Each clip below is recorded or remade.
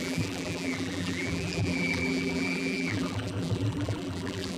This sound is remade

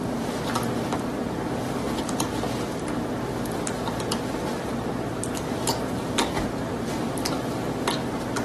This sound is recorded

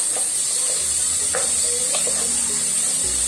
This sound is recorded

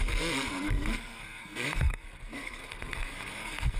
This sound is remade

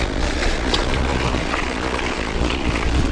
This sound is remade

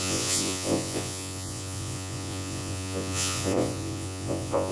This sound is remade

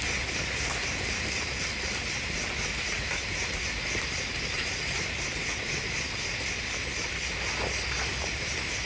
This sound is recorded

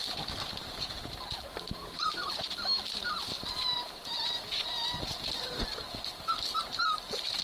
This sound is recorded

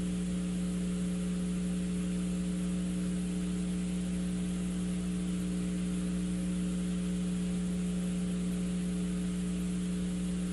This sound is recorded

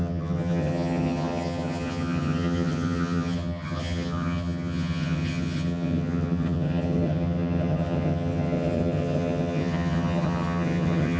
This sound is remade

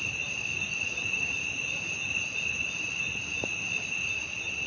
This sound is recorded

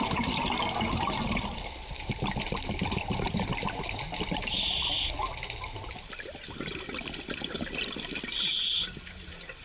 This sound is recorded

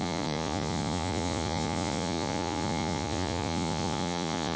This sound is remade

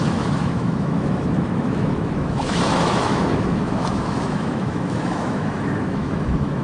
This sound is remade